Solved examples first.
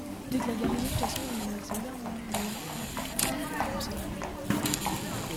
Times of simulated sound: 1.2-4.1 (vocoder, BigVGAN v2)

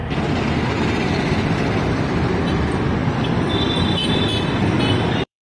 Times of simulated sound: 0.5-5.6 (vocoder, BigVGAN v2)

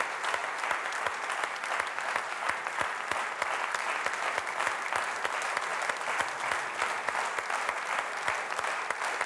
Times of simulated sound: none

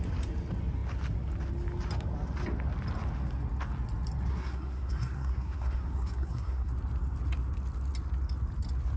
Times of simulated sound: 4.3-6.7 (codec, SNAC)

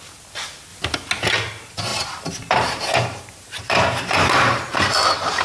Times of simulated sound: 1.9-5.4 (vocoder, BigVGAN v2)

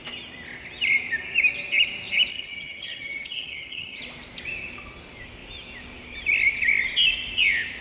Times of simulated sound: 2.3-4.0 (vocoder, HiFi-GAN)